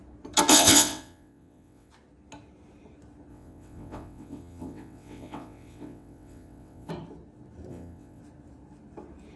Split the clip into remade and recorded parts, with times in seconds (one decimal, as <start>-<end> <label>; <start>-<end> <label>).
0.0-0.5 recorded; 0.5-1.9 remade; 1.9-3.3 recorded; 3.3-6.9 remade; 6.9-7.7 recorded; 7.7-8.2 remade; 8.2-9.4 recorded